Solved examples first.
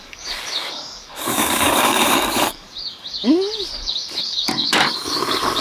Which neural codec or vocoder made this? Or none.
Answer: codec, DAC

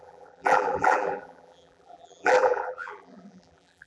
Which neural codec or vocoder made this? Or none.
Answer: vocoder, BigVGAN v2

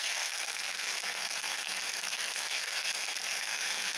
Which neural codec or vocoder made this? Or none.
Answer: codec, SNAC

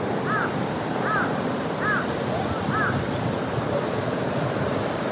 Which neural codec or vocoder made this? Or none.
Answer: none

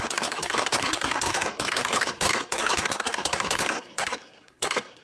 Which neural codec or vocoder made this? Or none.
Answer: codec, SNAC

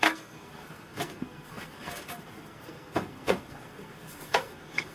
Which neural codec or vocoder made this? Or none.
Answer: codec, SNAC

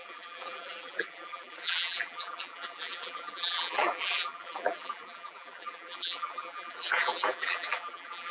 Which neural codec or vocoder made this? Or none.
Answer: vocoder, BigVGAN v2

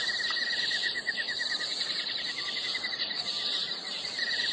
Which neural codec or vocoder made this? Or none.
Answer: vocoder, BigVGAN v2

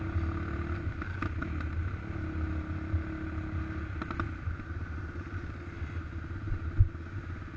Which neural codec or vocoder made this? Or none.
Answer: none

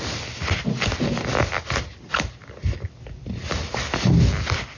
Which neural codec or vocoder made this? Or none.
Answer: none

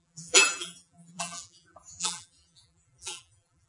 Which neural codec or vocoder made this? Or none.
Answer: vocoder, BigVGAN v2